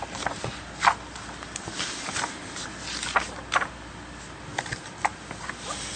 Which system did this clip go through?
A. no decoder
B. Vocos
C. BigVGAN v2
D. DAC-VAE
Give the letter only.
A